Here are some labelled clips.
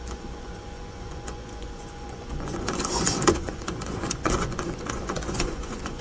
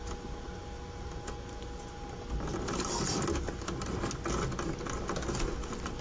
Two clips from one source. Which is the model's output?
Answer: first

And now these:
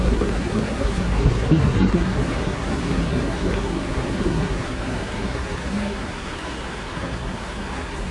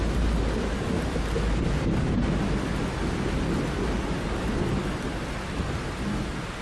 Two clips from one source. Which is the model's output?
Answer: first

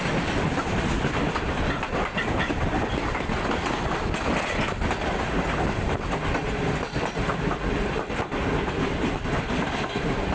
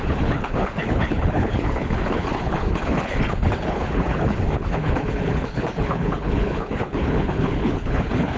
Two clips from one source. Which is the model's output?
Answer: second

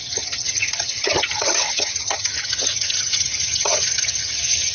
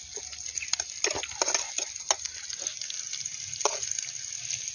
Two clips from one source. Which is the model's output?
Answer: first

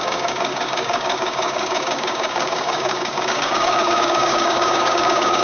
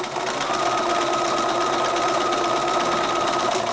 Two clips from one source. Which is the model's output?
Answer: first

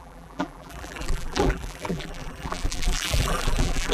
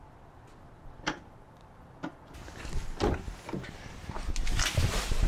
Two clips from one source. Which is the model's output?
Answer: first